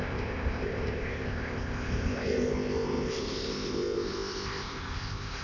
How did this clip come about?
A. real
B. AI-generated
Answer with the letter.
B